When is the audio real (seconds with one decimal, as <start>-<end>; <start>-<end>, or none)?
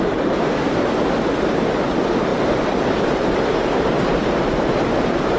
0.0-2.3; 3.9-5.4